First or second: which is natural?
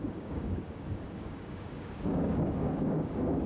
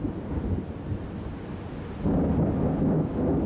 second